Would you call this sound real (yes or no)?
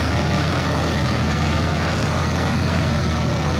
no